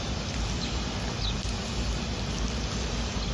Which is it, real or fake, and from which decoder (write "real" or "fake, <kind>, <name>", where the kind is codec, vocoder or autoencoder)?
real